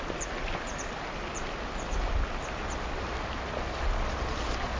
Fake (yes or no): no